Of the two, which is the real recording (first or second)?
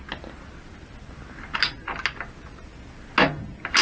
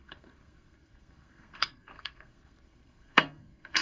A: first